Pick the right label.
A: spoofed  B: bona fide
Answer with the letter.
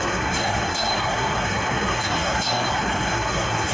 A